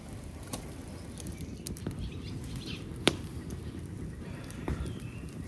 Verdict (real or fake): fake